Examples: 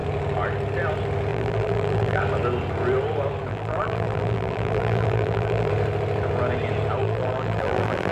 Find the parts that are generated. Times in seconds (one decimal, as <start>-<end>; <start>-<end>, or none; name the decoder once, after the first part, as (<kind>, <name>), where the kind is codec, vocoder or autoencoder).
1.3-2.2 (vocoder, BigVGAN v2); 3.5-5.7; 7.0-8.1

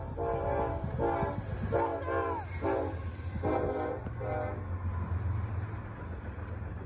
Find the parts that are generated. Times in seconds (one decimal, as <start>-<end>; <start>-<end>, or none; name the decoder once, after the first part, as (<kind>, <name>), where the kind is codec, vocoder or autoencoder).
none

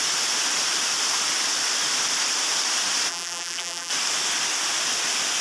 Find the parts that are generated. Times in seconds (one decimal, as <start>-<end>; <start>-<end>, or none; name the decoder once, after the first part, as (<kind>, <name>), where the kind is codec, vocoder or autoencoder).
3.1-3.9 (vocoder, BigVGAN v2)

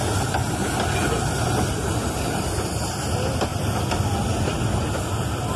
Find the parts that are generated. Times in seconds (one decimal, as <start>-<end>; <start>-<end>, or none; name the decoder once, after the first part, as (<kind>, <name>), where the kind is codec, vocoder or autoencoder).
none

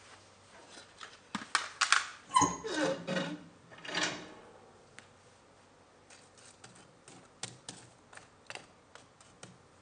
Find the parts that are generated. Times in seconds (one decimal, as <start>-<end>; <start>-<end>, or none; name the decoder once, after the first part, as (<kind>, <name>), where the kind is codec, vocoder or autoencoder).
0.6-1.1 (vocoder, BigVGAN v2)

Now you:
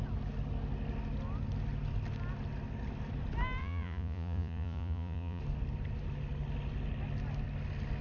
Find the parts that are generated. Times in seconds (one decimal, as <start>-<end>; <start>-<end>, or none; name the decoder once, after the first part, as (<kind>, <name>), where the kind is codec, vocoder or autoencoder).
3.6-5.4 (vocoder, Vocos)